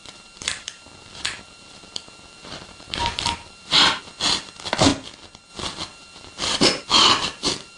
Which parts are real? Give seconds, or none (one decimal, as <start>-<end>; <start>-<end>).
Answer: 4.1-5.9